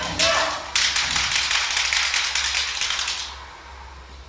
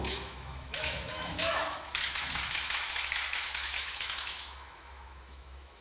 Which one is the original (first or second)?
first